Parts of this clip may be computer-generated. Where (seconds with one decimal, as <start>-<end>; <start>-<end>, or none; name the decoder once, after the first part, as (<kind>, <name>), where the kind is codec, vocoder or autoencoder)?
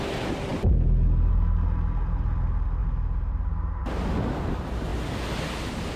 none